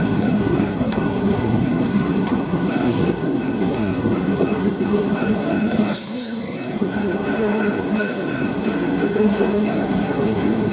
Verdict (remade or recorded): remade